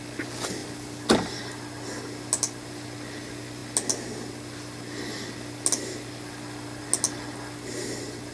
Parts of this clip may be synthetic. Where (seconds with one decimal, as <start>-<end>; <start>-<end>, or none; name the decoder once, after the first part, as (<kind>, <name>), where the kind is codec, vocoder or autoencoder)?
none